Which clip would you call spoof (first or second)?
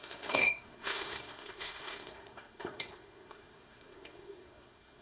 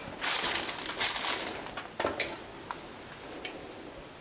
first